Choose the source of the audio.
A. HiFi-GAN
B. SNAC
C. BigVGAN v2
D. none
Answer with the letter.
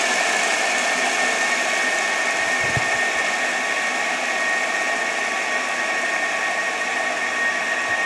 D